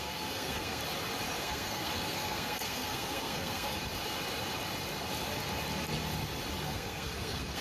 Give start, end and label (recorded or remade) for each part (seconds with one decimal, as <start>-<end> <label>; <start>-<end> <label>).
0.0-0.8 remade; 0.8-1.4 recorded; 1.4-3.8 remade; 3.8-6.6 recorded; 6.6-7.6 remade